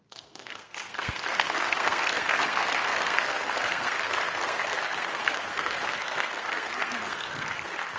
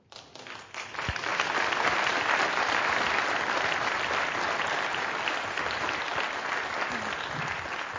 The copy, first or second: first